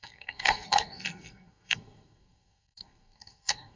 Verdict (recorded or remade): remade